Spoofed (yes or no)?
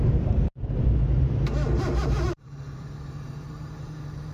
yes